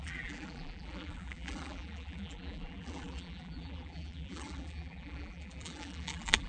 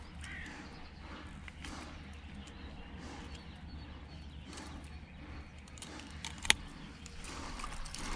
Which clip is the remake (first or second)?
first